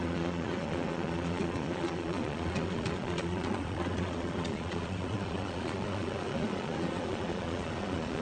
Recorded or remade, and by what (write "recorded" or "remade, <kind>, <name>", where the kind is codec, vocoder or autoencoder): remade, vocoder, Vocos